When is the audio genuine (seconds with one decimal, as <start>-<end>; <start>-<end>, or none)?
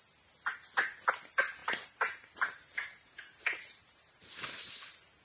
0.0-1.6; 4.7-5.2